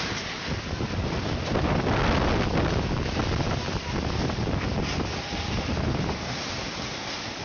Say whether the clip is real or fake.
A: real